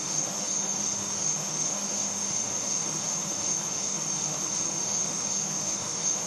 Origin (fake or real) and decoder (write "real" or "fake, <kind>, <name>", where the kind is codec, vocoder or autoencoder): fake, autoencoder, DAC-VAE